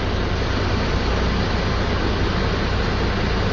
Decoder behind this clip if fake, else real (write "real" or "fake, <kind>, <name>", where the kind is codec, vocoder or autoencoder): real